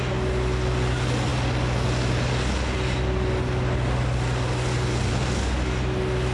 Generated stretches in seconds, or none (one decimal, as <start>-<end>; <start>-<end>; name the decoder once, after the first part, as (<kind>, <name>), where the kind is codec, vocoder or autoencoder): none